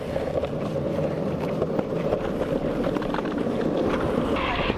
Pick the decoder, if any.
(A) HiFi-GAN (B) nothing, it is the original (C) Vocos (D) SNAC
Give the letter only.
B